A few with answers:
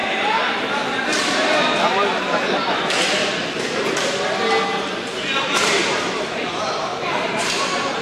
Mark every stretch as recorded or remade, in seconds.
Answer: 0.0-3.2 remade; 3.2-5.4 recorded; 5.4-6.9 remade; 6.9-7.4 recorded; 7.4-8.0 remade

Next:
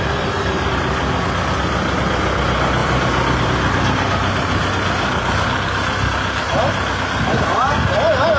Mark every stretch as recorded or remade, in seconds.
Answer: 0.0-2.8 recorded; 2.8-3.4 remade; 3.4-8.4 recorded

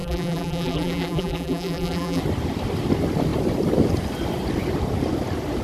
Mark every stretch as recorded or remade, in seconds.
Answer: 0.0-2.2 remade; 2.2-5.6 recorded

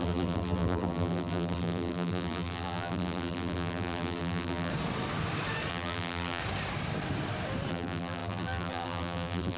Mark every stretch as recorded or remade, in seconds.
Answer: 0.0-4.7 remade; 4.7-5.7 recorded; 5.7-6.4 remade; 6.4-7.7 recorded; 7.7-9.6 remade

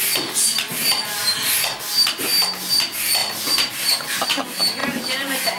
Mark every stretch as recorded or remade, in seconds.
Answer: 0.0-3.2 recorded; 3.2-3.9 remade; 3.9-4.8 recorded; 4.8-5.6 remade